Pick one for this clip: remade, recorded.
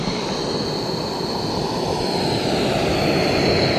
recorded